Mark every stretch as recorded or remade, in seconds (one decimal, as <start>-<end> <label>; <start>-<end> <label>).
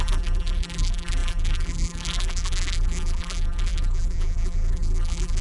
0.0-5.4 remade